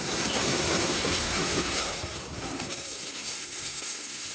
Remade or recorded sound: remade